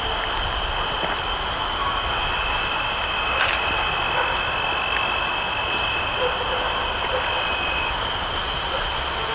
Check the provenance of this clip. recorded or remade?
recorded